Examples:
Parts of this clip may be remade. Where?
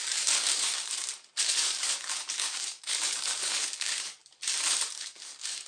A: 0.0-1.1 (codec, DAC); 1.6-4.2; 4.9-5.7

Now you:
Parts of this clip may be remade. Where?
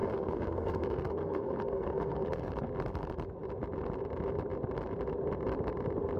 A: 0.0-2.5 (codec, SNAC)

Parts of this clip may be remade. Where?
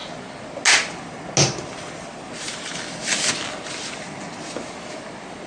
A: none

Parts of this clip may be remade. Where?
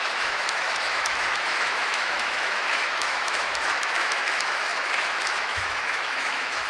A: 0.0-6.7 (autoencoder, DAC-VAE)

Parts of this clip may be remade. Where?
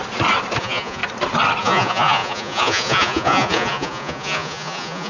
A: 0.6-1.0 (vocoder, Vocos); 1.6-5.1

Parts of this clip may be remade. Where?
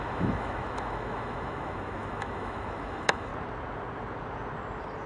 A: 0.0-3.3 (autoencoder, DAC-VAE)